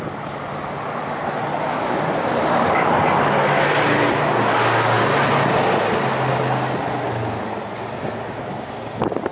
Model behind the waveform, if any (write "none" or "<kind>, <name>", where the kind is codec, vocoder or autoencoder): none